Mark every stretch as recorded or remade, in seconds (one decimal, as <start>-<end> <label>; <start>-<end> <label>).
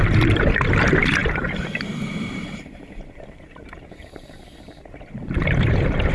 0.0-6.1 remade